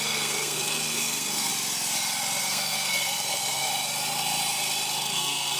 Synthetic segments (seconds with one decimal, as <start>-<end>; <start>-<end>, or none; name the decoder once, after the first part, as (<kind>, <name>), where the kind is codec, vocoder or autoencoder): 0.0-1.5 (codec, SNAC); 2.4-3.7; 5.0-5.6